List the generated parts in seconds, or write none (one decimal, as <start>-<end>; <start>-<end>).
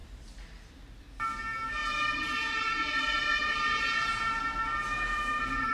none